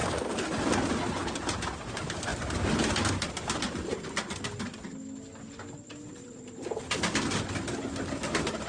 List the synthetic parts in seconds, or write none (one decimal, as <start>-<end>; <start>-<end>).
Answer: none

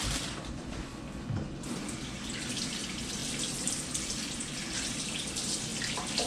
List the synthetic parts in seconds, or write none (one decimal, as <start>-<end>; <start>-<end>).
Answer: 0.0-0.9; 2.3-3.2; 4.4-5.7

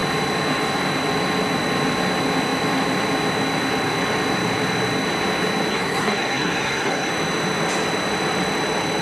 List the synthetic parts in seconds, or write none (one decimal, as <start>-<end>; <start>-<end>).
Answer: 5.7-7.1